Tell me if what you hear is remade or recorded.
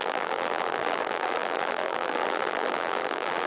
remade